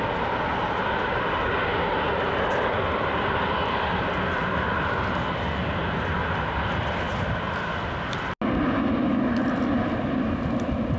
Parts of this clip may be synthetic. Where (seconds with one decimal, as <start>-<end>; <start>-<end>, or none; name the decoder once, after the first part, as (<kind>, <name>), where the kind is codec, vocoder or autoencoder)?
0.5-1.5 (vocoder, BigVGAN v2)